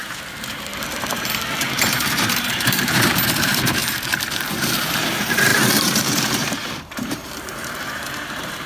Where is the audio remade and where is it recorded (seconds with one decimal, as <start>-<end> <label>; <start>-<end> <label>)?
0.0-0.7 remade; 0.7-1.6 recorded; 1.6-8.7 remade